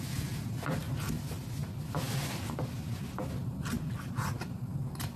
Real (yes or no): yes